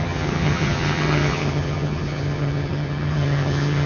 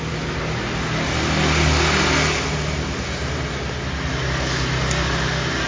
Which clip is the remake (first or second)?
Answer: first